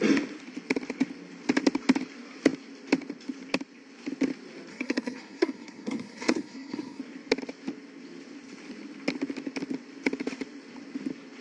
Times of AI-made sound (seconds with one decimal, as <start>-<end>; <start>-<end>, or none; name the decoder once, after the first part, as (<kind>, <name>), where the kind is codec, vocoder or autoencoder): 4.7-7.0 (codec, SNAC)